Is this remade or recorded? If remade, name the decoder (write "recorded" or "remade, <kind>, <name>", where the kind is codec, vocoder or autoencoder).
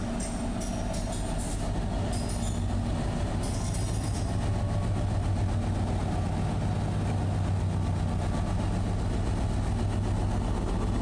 recorded